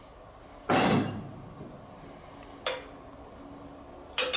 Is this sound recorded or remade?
recorded